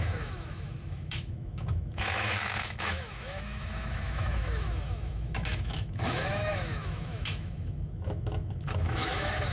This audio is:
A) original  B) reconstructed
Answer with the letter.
B